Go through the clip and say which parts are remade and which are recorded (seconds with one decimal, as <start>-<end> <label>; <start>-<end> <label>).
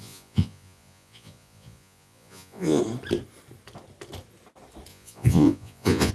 0.0-2.8 remade; 2.8-4.9 recorded; 4.9-6.1 remade